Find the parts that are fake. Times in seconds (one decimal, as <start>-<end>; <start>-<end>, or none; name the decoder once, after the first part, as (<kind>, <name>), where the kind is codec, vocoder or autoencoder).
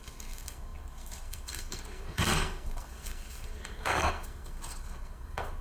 0.0-5.6 (codec, SNAC)